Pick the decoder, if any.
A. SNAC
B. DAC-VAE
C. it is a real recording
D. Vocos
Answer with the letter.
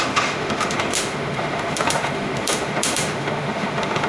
B